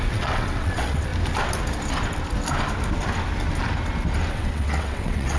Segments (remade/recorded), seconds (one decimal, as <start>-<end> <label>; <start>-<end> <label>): 0.0-1.1 remade; 1.1-4.3 recorded; 4.3-5.4 remade